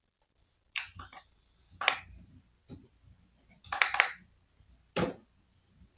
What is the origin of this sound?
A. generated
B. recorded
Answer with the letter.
B